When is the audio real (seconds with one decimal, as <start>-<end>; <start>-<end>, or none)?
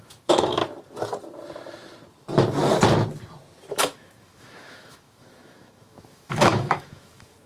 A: 0.6-3.7